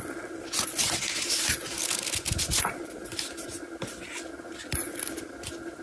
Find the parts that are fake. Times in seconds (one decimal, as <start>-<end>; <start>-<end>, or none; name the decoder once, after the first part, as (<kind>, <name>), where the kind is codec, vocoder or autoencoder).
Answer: none

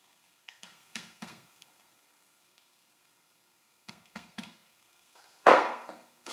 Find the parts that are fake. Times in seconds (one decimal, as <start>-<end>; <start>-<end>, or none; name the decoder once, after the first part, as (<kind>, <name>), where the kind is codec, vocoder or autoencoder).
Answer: 0.0-6.3 (codec, SNAC)

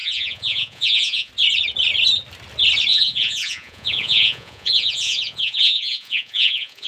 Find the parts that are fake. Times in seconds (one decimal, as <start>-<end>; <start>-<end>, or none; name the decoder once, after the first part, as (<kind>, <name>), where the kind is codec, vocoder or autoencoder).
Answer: 0.0-1.3 (vocoder, Vocos); 2.9-6.9

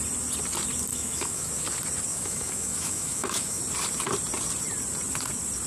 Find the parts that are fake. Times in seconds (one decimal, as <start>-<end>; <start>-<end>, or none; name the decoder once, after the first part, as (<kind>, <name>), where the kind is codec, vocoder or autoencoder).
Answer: 0.9-1.5 (autoencoder, DAC-VAE); 2.1-3.6

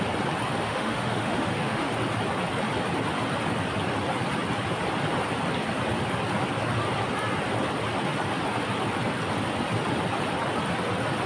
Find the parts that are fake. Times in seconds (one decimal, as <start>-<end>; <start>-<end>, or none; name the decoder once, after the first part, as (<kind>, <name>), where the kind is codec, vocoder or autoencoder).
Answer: 0.6-1.9 (autoencoder, DAC-VAE)

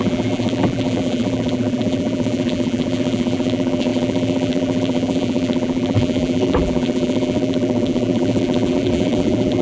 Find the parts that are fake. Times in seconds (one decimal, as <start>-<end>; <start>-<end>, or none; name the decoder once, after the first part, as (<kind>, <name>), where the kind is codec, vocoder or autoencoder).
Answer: 0.0-9.6 (vocoder, BigVGAN v2)